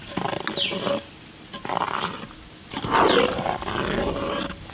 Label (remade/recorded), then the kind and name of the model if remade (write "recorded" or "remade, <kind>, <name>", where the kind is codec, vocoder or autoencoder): recorded